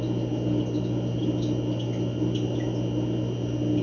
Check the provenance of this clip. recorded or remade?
recorded